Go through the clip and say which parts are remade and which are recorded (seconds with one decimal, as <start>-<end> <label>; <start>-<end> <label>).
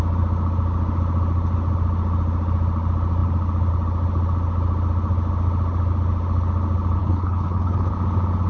0.0-7.0 recorded; 7.0-7.9 remade; 7.9-8.5 recorded